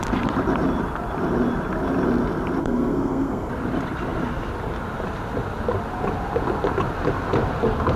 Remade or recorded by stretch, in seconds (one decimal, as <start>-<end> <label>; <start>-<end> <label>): 0.0-2.6 recorded; 2.6-3.5 remade; 3.5-8.0 recorded